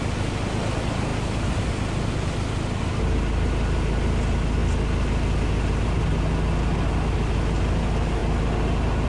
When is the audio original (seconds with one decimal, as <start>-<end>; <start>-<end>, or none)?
0.0-9.1